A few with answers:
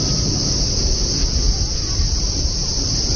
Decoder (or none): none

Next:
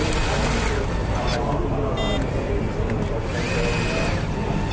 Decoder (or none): none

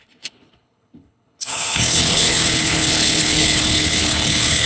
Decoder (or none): codec, HILCodec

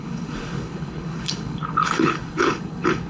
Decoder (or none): codec, HILCodec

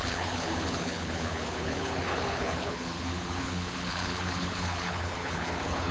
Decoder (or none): codec, HILCodec